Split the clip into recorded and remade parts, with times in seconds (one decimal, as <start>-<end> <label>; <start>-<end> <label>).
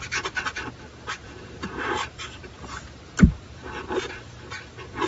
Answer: 0.0-1.2 recorded; 1.2-4.3 remade; 4.3-5.1 recorded